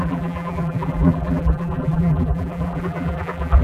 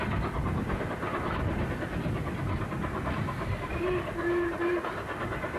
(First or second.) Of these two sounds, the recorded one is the second